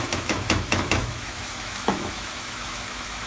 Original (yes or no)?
no